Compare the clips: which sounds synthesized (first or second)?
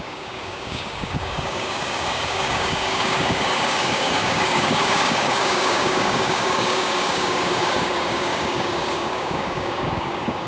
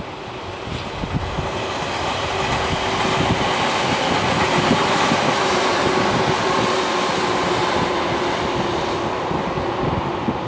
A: first